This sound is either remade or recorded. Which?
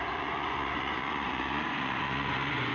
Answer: remade